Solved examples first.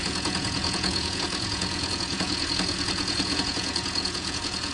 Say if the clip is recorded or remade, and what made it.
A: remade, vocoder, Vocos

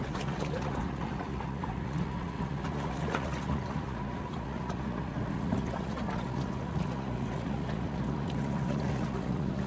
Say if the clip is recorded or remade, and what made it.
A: remade, vocoder, Vocos